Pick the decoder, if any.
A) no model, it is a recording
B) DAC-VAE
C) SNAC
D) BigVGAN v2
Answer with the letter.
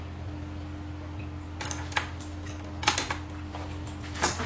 A